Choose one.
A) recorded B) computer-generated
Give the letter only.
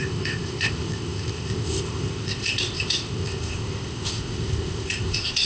B